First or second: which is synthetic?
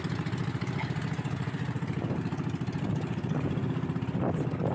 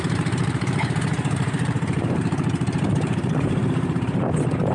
second